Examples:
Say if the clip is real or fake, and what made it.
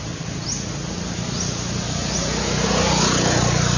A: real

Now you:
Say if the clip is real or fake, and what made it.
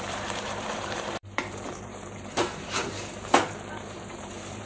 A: fake, vocoder, BigVGAN v2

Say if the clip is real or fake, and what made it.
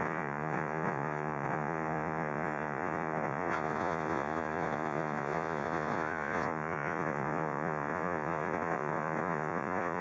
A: fake, vocoder, Vocos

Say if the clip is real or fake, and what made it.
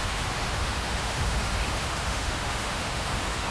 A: fake, autoencoder, DAC-VAE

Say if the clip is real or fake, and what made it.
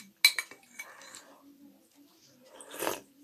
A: real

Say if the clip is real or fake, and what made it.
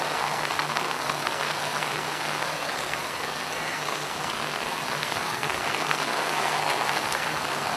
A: fake, codec, SNAC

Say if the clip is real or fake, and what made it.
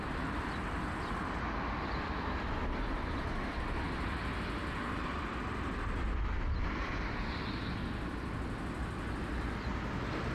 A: real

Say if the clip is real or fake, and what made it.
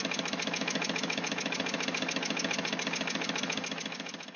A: fake, autoencoder, DAC-VAE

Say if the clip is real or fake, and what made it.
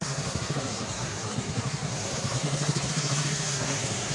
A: fake, codec, SNAC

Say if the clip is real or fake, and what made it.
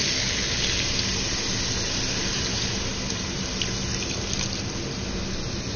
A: real